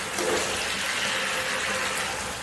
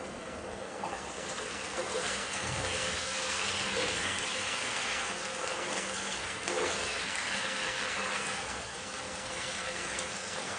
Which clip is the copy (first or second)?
second